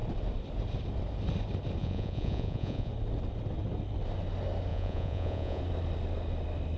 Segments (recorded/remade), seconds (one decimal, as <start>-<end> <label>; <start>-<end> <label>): 0.0-1.8 recorded; 1.8-2.9 remade; 2.9-4.7 recorded; 4.7-5.6 remade; 5.6-6.8 recorded